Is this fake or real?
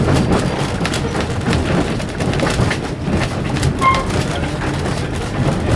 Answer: real